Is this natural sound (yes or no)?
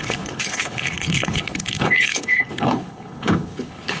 no